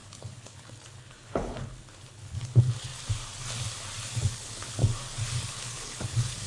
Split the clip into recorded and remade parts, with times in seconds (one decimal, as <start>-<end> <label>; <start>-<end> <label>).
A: 0.0-2.9 remade; 2.9-4.3 recorded; 4.3-4.8 remade; 4.8-5.5 recorded; 5.5-6.5 remade